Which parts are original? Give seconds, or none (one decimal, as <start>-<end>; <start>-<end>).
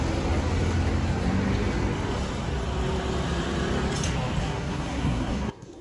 0.0-4.4